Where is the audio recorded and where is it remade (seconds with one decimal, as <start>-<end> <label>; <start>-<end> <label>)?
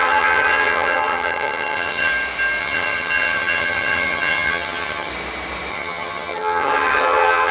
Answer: 0.0-2.1 remade; 2.1-2.6 recorded; 2.6-5.1 remade; 5.1-5.7 recorded; 5.7-7.5 remade